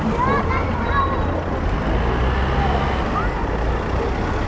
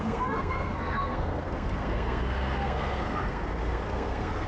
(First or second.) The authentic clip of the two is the first